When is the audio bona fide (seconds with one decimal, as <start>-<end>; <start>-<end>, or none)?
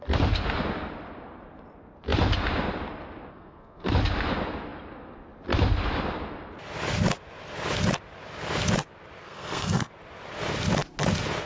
0.0-3.3; 3.9-9.2; 9.9-11.5